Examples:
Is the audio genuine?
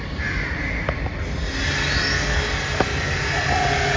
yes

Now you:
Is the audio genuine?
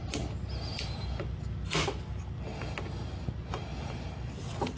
yes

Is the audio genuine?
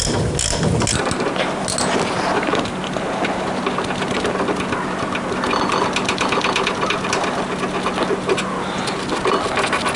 yes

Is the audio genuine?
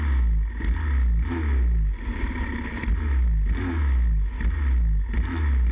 yes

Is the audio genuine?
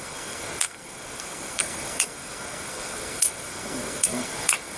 no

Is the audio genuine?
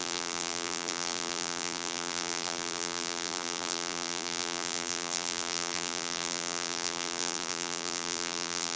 no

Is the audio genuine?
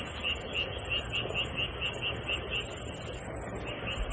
yes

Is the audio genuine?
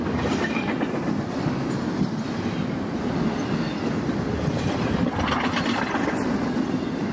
yes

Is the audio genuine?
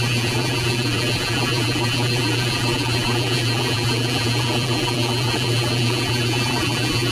no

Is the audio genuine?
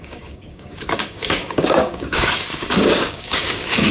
no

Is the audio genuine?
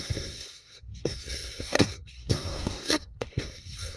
no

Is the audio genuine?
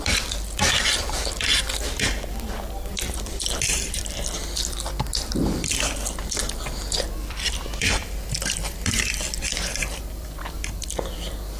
no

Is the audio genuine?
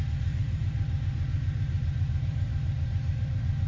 no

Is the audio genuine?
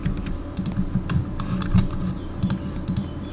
no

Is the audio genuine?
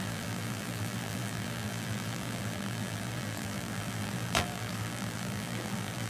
no